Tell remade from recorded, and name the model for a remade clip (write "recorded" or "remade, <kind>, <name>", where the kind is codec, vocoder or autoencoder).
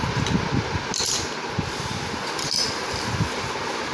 recorded